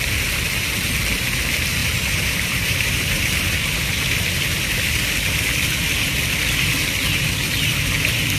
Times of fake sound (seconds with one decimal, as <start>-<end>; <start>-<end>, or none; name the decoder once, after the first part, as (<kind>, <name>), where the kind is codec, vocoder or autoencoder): 1.8-3.2 (vocoder, BigVGAN v2)